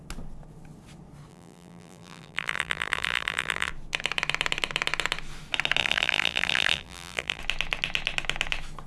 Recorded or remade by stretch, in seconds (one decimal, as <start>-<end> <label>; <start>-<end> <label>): 0.0-1.3 recorded; 1.3-3.7 remade; 3.7-5.8 recorded; 5.8-7.4 remade; 7.4-8.9 recorded